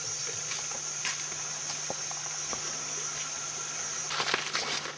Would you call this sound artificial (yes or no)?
no